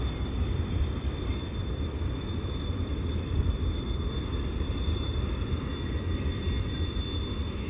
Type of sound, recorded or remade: remade